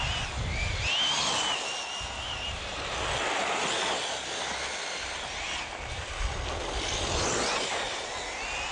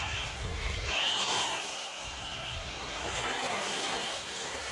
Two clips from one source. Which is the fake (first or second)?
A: second